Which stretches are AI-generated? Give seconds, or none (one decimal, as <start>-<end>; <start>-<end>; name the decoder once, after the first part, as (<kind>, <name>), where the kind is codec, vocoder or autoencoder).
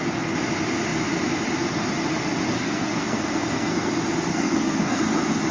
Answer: 2.5-3.9 (codec, SNAC); 4.3-5.0